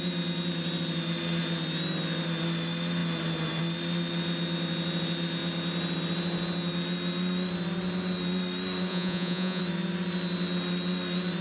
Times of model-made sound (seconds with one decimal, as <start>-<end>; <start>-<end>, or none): 8.9-9.6